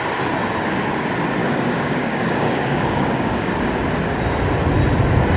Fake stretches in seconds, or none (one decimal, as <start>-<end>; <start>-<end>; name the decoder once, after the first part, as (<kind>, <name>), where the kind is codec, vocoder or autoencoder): 1.4-3.5 (codec, DAC)